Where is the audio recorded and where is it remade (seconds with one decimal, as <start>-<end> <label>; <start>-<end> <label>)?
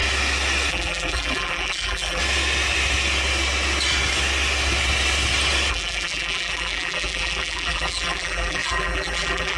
0.0-0.7 recorded; 0.7-2.2 remade; 2.2-5.7 recorded; 5.7-9.6 remade